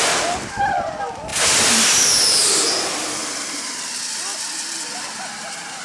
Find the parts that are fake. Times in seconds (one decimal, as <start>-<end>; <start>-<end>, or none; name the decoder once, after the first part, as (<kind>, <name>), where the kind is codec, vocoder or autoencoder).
0.0-1.3 (vocoder, BigVGAN v2); 2.1-5.8